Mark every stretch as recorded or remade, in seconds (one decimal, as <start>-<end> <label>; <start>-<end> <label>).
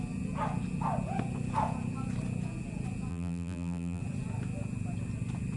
0.0-3.1 recorded; 3.1-4.0 remade; 4.0-5.6 recorded